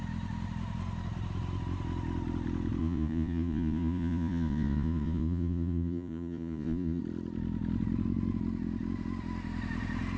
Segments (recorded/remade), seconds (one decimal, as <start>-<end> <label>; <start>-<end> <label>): 0.0-2.8 recorded; 2.8-7.0 remade; 7.0-10.2 recorded